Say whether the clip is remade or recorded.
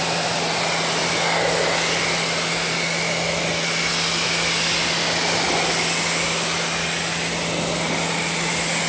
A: recorded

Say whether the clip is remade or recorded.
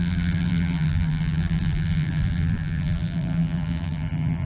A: remade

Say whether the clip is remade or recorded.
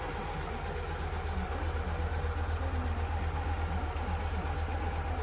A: recorded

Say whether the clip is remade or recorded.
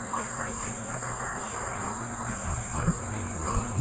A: remade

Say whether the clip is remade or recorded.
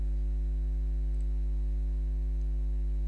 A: recorded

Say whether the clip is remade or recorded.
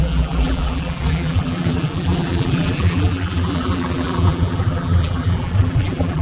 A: remade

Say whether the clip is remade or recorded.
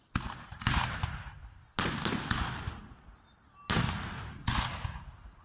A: recorded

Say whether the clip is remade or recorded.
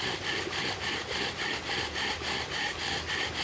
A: recorded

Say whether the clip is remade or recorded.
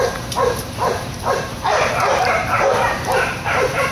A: remade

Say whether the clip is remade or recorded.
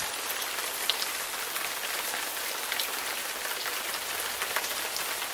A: recorded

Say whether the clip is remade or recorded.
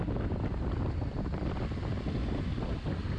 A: recorded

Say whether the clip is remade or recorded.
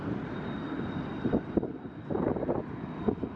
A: recorded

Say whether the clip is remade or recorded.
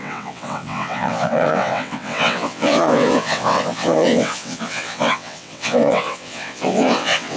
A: remade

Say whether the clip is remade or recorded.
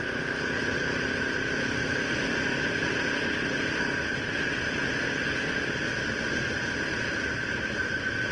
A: recorded